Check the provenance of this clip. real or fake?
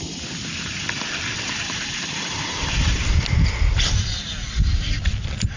real